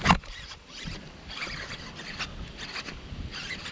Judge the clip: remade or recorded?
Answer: recorded